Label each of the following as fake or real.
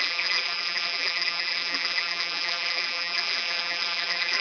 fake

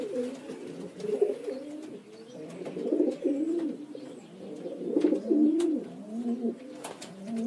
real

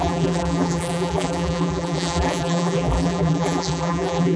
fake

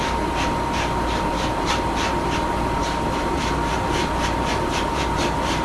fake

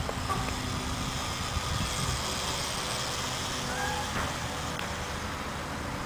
real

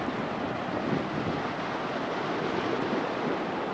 real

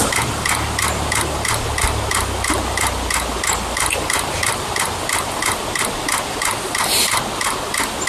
fake